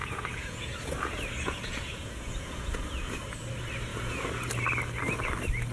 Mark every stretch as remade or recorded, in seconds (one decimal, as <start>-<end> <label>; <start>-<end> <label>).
0.0-3.4 remade; 3.4-3.9 recorded; 3.9-4.5 remade; 4.5-5.7 recorded